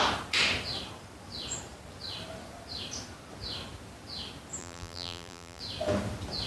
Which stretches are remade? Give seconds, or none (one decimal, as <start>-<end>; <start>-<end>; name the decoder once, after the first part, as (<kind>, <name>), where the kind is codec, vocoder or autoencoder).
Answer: 4.6-5.6 (vocoder, BigVGAN v2)